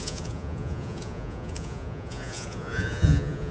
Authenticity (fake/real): fake